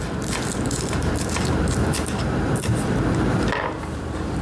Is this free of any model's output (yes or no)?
no